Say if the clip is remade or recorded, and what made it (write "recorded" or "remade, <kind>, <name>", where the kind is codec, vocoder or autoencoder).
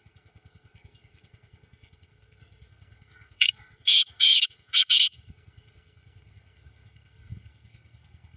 remade, codec, SNAC